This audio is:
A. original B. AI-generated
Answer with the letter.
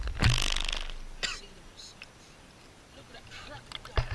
A